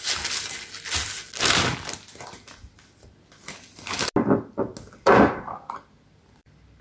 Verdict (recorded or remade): recorded